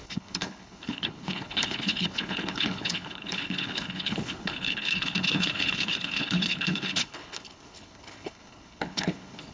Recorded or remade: remade